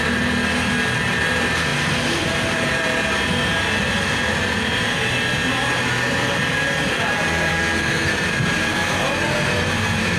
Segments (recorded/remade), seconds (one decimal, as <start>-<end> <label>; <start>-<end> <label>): 0.0-7.5 recorded; 7.5-8.1 remade; 8.1-10.2 recorded